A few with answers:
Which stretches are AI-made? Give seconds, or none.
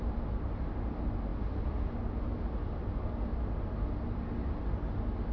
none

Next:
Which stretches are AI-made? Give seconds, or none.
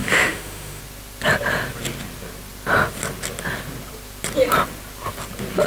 0.0-0.8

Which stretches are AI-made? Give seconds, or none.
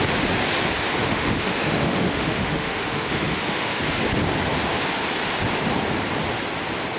1.0-3.8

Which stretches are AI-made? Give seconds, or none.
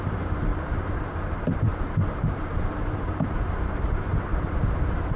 0.0-4.1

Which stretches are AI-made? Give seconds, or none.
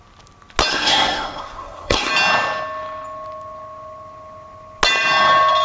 0.7-2.1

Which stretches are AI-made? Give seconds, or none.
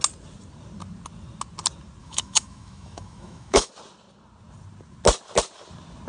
2.0-3.7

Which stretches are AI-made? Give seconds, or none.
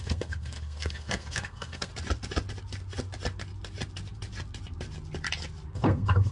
0.0-1.9; 5.7-6.3